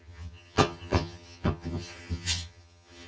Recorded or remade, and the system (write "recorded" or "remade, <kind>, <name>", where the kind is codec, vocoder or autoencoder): remade, vocoder, HiFi-GAN